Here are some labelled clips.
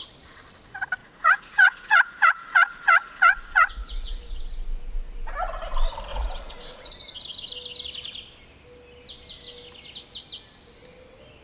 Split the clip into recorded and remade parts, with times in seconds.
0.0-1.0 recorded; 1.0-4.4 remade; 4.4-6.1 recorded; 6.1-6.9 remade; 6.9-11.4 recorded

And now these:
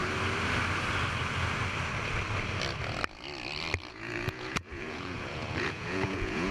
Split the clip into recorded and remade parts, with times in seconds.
0.0-3.9 recorded; 3.9-6.5 remade

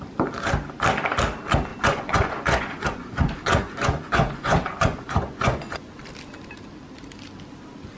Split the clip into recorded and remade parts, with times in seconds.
0.0-1.7 recorded; 1.7-5.9 remade; 5.9-8.0 recorded

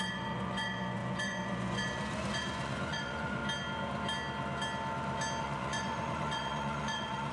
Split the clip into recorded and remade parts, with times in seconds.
0.0-3.4 remade; 3.4-5.4 recorded; 5.4-7.3 remade

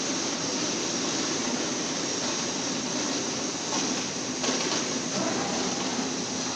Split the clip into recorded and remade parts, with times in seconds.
0.0-6.6 recorded

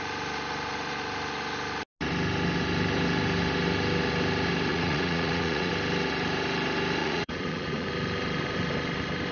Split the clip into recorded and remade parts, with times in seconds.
0.0-4.7 recorded; 4.7-5.7 remade; 5.7-7.0 recorded; 7.0-7.9 remade; 7.9-9.3 recorded

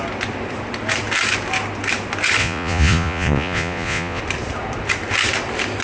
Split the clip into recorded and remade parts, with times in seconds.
0.0-2.4 recorded; 2.4-4.2 remade; 4.2-5.8 recorded

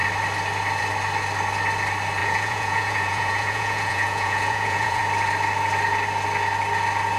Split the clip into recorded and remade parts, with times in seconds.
0.0-2.2 recorded; 2.2-5.0 remade; 5.0-7.2 recorded